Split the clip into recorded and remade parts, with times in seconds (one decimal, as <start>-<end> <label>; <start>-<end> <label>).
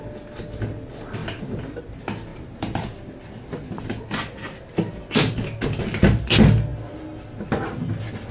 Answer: 0.0-1.2 recorded; 1.2-1.8 remade; 1.8-8.3 recorded